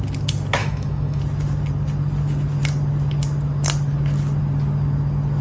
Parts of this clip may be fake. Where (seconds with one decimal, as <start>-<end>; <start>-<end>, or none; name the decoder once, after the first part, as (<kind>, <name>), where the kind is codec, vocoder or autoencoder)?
0.6-1.2 (autoencoder, DAC-VAE)